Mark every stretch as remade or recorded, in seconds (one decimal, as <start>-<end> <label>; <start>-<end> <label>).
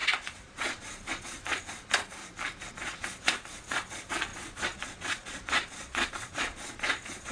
0.0-2.2 remade; 2.2-2.7 recorded; 2.7-7.3 remade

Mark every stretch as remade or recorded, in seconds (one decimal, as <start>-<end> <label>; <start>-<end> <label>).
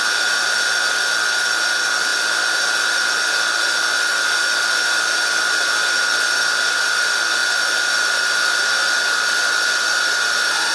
0.0-10.7 recorded